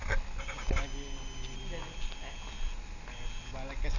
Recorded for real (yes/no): yes